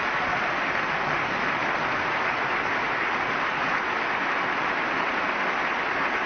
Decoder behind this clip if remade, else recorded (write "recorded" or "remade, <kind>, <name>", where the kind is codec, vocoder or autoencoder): recorded